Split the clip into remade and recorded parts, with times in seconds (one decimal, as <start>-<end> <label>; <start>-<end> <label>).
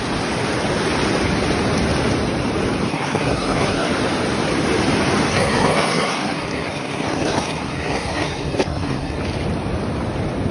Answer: 0.0-2.9 recorded; 2.9-3.9 remade; 3.9-5.3 recorded; 5.3-9.2 remade; 9.2-10.5 recorded